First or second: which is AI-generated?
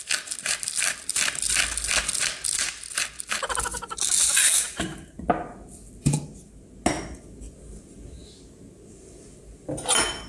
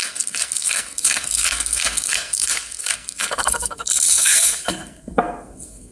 second